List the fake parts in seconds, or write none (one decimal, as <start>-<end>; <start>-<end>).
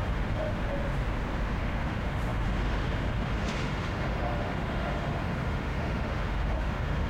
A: 0.0-0.8; 1.6-7.1